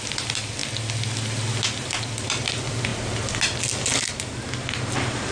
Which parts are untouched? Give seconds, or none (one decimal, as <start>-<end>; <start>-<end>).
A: 0.6-2.0; 2.9-4.8